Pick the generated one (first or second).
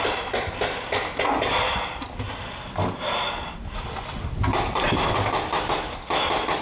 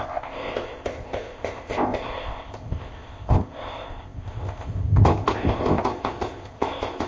second